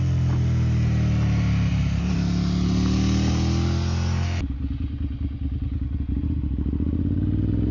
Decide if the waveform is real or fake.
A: real